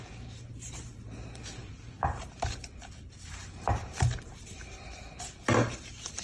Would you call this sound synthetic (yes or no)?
yes